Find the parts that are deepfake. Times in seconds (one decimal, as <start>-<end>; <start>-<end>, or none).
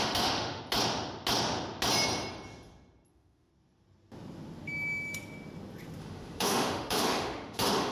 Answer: 0.0-0.6; 3.1-3.5; 6.0-7.9